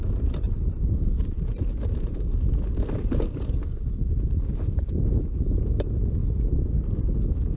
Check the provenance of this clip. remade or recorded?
recorded